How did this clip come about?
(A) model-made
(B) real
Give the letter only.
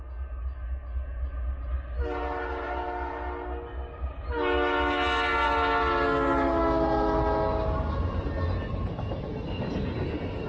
B